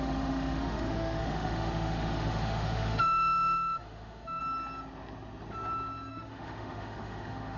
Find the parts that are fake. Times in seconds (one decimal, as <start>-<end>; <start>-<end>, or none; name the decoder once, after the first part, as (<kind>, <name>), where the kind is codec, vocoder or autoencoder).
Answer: 0.0-4.4 (autoencoder, DAC-VAE); 6.1-7.6